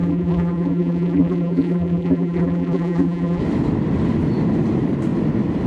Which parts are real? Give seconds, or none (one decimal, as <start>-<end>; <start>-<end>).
3.4-5.7